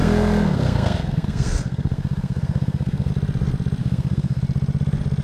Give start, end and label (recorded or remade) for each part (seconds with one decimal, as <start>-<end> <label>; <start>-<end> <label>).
0.0-3.1 remade; 3.1-3.8 recorded; 3.8-4.4 remade; 4.4-5.2 recorded